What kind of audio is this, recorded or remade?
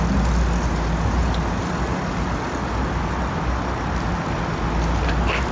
recorded